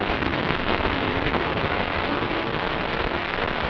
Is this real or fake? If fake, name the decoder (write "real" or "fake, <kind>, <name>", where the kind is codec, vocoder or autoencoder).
fake, codec, SNAC